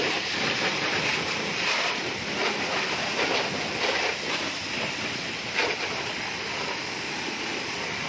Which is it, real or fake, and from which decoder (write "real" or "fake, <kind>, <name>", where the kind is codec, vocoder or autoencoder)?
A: fake, vocoder, BigVGAN v2